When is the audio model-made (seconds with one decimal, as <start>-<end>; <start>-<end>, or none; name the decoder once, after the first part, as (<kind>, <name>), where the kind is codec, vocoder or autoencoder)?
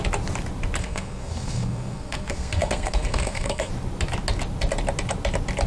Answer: 0.8-3.7 (codec, SNAC)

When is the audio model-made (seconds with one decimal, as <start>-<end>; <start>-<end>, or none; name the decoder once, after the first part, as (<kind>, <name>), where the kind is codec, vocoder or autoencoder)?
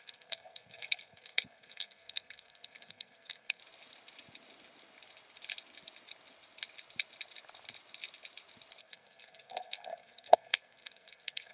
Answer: 0.0-3.6 (codec, SNAC); 8.8-11.5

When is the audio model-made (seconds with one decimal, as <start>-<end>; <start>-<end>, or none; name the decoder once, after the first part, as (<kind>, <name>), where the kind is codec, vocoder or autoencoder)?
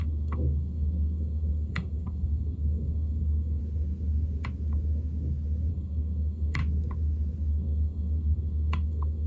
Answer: 0.0-3.6 (codec, SNAC); 5.7-6.6; 7.5-9.3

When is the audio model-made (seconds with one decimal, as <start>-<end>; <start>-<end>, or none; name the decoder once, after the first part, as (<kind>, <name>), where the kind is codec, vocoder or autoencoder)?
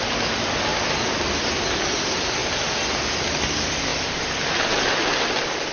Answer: none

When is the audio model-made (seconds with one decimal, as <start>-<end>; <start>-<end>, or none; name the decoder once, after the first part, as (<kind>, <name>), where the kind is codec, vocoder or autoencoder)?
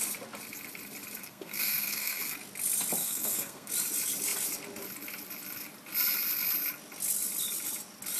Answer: 1.2-2.2 (codec, SNAC); 3.0-3.7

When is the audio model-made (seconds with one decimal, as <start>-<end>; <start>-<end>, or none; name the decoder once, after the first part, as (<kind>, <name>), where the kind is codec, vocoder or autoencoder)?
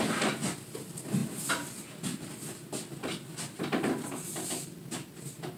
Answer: none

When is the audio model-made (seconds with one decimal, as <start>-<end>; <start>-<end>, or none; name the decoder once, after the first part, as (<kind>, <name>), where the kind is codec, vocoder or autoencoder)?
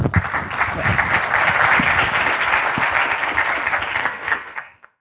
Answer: 4.0-5.0 (codec, SNAC)